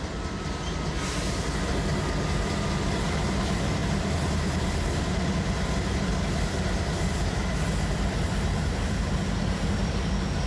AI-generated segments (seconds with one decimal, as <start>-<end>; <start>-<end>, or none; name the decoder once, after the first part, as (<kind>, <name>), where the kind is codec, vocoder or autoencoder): none

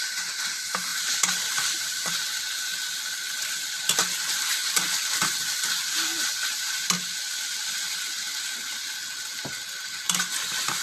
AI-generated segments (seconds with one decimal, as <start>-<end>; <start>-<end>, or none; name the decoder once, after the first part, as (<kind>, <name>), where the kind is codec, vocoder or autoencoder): 0.9-2.1 (vocoder, BigVGAN v2)

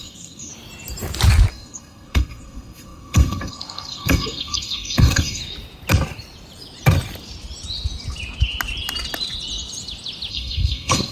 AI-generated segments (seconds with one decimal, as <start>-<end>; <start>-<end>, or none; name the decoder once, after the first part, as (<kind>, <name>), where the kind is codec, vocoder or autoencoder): 0.0-0.5 (codec, SNAC); 1.5-5.4; 10.3-11.1

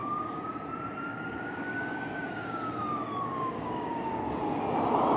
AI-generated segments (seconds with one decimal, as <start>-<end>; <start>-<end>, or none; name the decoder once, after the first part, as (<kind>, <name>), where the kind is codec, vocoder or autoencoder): 0.0-0.5 (codec, DAC); 1.1-4.2

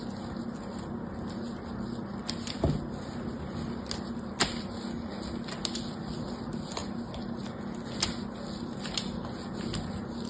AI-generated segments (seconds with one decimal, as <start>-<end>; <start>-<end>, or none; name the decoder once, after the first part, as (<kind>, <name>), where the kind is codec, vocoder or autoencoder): none

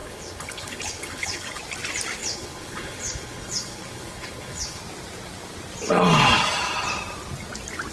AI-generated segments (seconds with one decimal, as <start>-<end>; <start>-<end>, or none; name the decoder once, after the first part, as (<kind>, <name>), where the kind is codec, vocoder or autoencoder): 0.0-1.6 (codec, HILCodec); 2.2-4.8

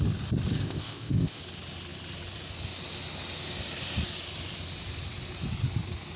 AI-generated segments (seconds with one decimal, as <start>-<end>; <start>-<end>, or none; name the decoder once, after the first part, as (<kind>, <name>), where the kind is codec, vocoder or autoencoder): 0.6-1.4 (codec, ZipCodec)

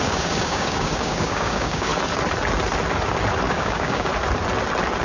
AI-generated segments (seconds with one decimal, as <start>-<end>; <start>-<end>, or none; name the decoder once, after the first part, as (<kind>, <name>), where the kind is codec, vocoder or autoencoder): 0.0-1.9 (codec, DAC); 3.5-4.1